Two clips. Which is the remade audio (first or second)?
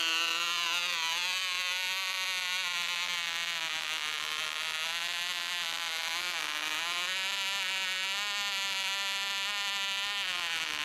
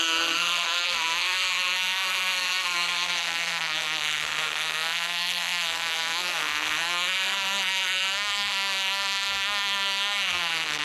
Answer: second